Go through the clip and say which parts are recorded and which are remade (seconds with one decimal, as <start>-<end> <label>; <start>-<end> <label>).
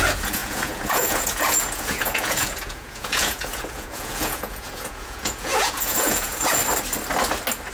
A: 0.0-6.6 remade; 6.6-7.7 recorded